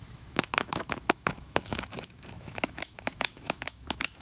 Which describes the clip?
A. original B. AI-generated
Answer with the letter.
B